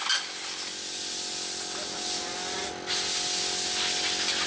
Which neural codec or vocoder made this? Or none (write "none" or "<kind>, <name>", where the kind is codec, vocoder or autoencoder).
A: none